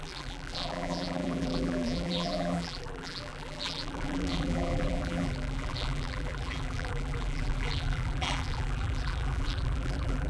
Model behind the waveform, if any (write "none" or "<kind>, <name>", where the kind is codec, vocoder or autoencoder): vocoder, BigVGAN v2